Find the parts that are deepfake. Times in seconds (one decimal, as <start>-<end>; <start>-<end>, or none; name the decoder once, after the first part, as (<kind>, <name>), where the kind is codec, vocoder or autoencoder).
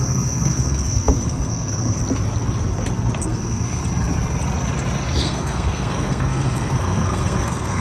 0.0-2.0 (codec, SNAC); 3.2-3.8; 5.2-7.8